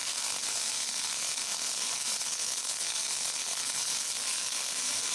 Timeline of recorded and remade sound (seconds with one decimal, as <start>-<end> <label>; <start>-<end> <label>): 0.0-5.1 remade